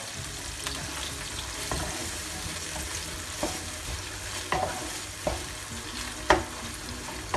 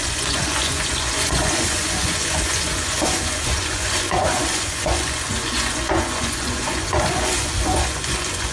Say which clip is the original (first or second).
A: first